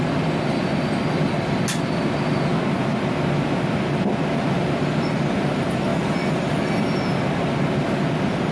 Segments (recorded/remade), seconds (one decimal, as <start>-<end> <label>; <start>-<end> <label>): 0.0-8.5 recorded